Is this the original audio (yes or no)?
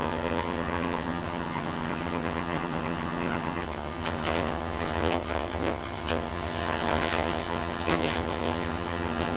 no